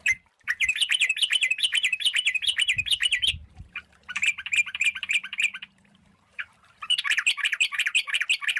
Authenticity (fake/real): fake